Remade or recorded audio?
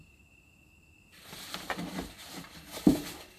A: recorded